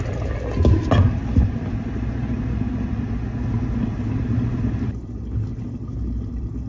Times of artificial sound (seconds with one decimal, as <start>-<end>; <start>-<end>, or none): none